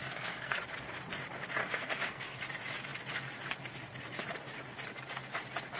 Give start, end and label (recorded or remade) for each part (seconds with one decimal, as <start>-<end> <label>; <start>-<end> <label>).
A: 0.0-0.6 remade; 0.6-1.6 recorded; 1.6-2.4 remade; 2.4-5.8 recorded